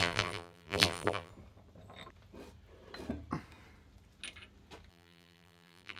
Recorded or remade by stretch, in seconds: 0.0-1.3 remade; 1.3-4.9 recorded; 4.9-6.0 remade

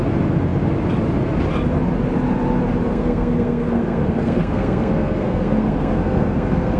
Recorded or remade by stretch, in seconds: 0.0-2.9 recorded; 2.9-6.8 remade